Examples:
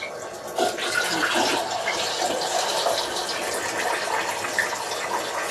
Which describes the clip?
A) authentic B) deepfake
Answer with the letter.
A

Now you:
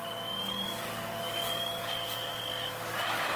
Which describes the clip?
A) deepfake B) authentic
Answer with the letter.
A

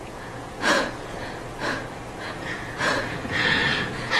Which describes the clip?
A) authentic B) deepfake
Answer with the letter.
B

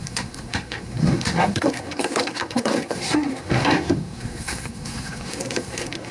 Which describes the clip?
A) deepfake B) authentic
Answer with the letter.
A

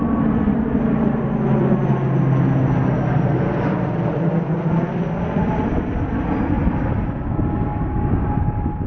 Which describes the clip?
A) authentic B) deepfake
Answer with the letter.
A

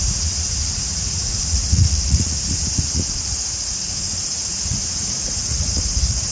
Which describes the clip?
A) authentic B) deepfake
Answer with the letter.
B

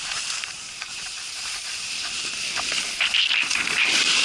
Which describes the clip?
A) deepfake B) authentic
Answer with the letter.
A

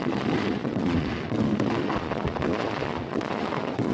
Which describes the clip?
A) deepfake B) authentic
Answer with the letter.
A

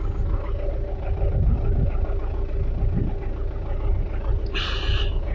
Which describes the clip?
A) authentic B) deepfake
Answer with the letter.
A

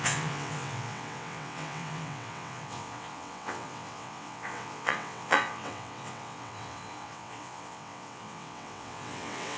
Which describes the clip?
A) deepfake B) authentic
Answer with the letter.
A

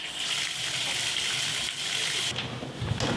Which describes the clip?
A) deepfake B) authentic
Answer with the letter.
B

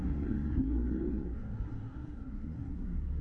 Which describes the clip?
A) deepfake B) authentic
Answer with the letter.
A